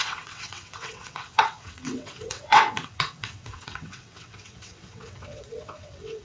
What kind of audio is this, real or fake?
fake